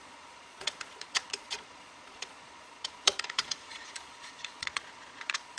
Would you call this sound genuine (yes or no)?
no